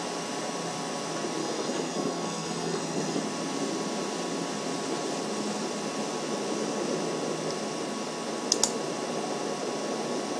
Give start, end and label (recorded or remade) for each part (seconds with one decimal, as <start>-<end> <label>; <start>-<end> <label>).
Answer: 0.0-1.4 recorded; 1.4-3.2 remade; 3.2-10.4 recorded